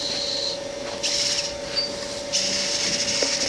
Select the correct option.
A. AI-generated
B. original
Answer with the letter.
B